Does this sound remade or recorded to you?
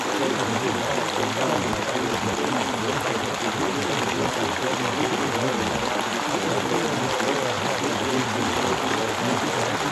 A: recorded